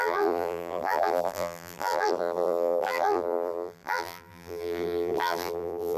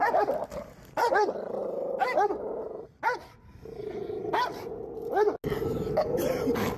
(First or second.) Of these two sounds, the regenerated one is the first